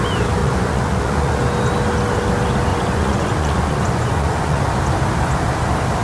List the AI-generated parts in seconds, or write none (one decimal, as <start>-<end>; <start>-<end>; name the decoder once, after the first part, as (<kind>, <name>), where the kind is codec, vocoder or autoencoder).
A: 0.4-1.4 (vocoder, Vocos); 2.7-4.6